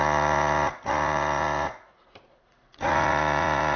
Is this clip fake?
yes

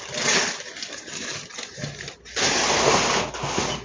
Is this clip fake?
no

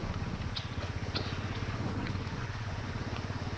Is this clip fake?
yes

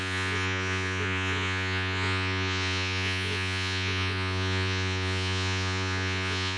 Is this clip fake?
yes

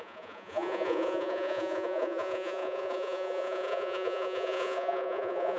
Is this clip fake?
yes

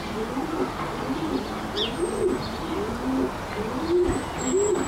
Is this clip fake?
no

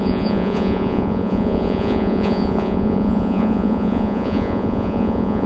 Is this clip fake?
yes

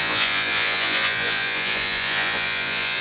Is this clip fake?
yes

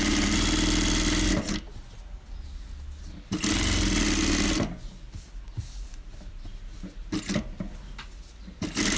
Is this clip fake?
no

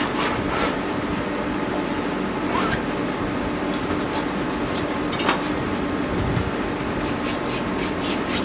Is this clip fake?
no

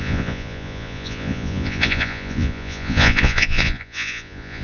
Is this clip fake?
yes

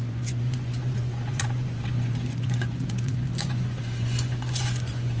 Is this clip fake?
yes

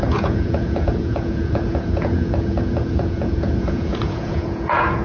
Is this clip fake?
yes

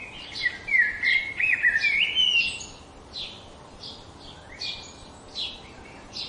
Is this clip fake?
no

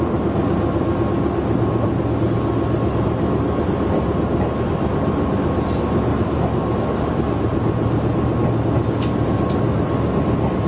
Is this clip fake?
no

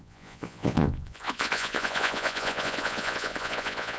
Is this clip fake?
yes